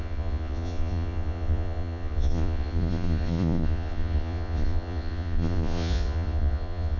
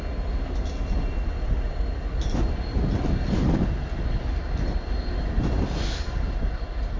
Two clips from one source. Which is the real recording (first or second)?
second